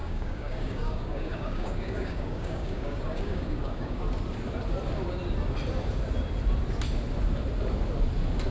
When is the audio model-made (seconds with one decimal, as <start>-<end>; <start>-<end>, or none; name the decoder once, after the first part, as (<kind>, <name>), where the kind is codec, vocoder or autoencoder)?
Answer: 0.0-4.0 (codec, DAC)